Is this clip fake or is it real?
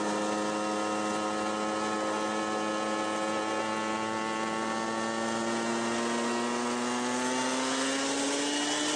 real